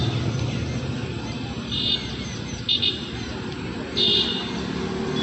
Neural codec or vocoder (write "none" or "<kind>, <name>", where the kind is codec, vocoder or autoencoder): none